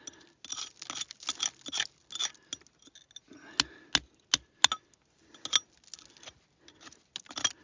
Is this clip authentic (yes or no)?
yes